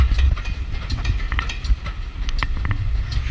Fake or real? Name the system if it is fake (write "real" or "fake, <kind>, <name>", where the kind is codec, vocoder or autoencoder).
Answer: real